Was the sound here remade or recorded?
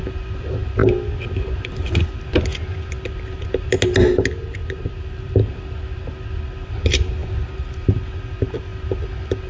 recorded